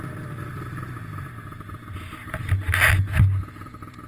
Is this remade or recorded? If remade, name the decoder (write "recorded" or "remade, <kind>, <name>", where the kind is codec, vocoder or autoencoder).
recorded